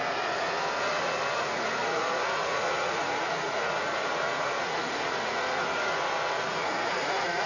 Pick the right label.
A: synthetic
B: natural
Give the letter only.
A